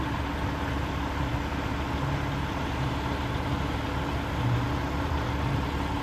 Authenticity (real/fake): real